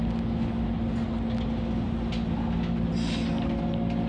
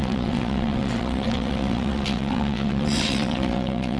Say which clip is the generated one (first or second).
second